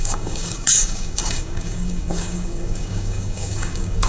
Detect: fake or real fake